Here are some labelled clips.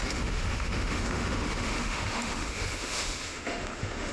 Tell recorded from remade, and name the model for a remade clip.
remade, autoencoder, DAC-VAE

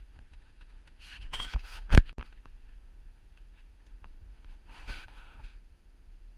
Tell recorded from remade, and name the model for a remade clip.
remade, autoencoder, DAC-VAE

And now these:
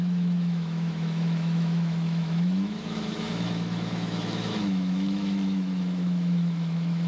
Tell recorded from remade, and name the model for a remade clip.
remade, autoencoder, DAC-VAE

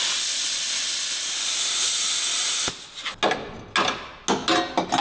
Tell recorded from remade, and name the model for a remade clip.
recorded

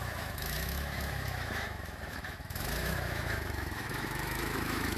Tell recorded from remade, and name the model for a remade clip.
remade, autoencoder, DAC-VAE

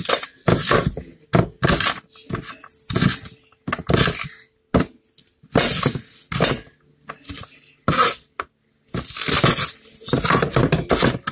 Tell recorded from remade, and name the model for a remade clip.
recorded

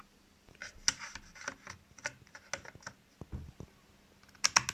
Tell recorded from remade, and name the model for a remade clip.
recorded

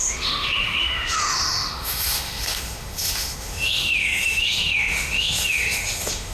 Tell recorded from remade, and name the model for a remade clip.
remade, autoencoder, DAC-VAE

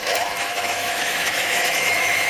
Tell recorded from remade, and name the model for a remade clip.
remade, autoencoder, DAC-VAE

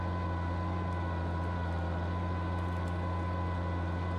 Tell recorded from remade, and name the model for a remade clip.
recorded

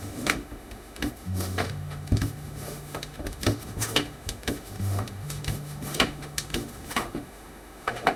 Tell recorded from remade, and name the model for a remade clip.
remade, autoencoder, DAC-VAE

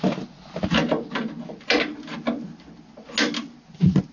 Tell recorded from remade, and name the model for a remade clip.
recorded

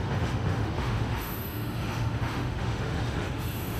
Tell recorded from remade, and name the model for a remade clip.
remade, autoencoder, DAC-VAE